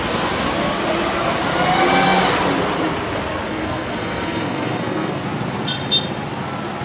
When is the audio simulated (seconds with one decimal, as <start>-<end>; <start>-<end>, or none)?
3.5-5.2